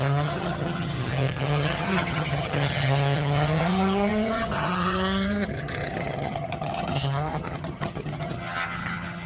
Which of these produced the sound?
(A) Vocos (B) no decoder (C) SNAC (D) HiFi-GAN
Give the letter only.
D